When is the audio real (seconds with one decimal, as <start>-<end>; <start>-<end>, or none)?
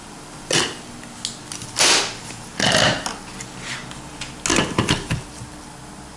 0.0-6.2